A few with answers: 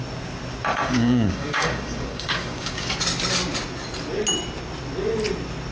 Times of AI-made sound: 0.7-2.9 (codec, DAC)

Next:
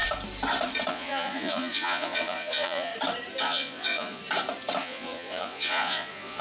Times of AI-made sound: 0.9-2.9 (vocoder, Vocos); 3.4-4.2; 4.8-6.4

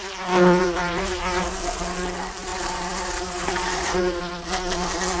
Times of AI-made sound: 0.6-1.2 (vocoder, BigVGAN v2); 2.5-4.2

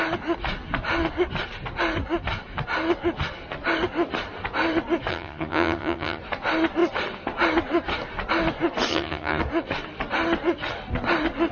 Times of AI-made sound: 5.1-6.2 (vocoder, HiFi-GAN); 8.9-9.4

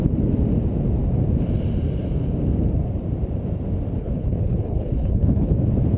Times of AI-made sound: 4.0-5.5 (codec, HILCodec)

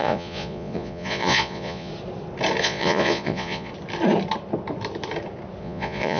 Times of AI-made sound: 0.0-1.9 (vocoder, Vocos); 2.6-3.7; 5.6-6.2